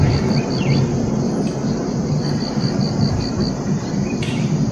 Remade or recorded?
recorded